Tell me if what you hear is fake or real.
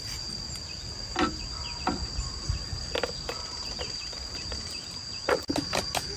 real